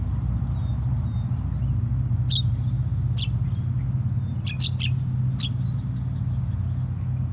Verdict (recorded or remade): recorded